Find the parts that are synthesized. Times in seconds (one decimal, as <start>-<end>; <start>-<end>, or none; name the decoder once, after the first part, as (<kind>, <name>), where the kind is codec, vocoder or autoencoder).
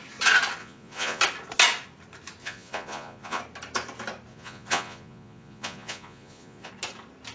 0.6-1.2 (vocoder, Vocos); 2.4-3.4; 4.3-6.7